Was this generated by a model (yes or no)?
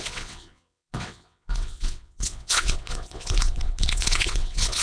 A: yes